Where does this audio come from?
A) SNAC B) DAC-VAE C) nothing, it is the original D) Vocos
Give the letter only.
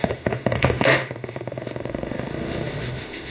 B